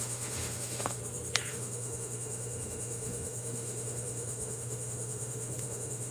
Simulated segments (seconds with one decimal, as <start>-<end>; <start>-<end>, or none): 0.0-1.0; 1.5-6.1